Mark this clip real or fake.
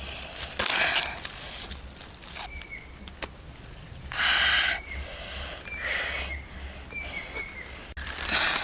real